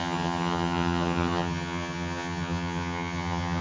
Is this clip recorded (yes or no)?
no